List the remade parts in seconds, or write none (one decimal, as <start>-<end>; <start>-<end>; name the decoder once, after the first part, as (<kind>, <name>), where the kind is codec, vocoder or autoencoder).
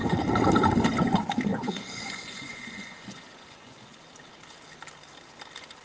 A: 1.5-4.1 (vocoder, Vocos)